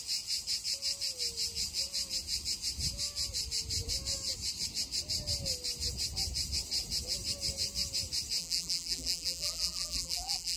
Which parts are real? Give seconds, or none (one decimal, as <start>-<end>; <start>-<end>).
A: 0.0-8.4